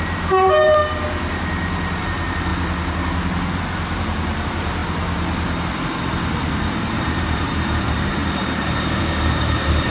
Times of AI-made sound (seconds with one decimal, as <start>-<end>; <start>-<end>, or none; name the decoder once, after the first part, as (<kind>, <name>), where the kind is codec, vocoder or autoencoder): 0.0-0.8 (vocoder, BigVGAN v2); 2.0-2.5; 3.6-4.8; 6.9-9.9